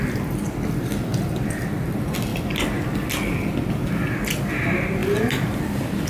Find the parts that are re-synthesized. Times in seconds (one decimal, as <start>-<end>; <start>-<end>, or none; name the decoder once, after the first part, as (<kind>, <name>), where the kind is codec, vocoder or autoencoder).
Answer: 1.1-1.6 (vocoder, BigVGAN v2); 5.0-5.6